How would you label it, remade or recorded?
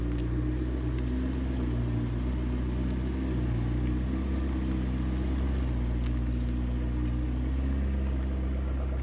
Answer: recorded